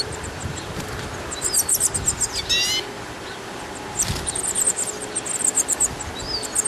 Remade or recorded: recorded